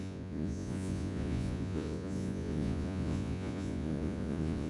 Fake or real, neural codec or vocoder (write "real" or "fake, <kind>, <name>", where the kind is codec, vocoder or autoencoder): fake, vocoder, Vocos